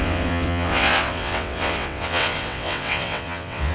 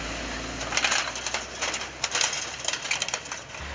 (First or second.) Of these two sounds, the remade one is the first